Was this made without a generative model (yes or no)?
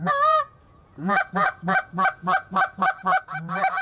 no